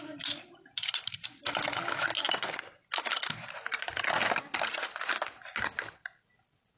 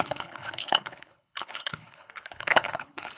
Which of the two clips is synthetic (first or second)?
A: second